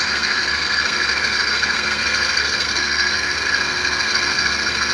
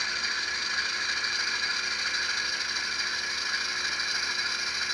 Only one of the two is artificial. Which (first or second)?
first